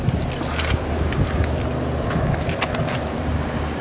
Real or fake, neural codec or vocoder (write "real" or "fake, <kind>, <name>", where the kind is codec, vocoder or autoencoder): real